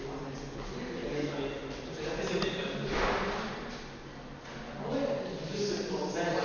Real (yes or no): yes